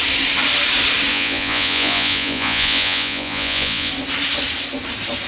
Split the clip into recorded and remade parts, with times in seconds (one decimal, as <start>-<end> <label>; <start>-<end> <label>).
0.0-1.1 recorded; 1.1-3.9 remade; 3.9-5.3 recorded